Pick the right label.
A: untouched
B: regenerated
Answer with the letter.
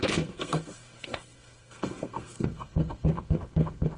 B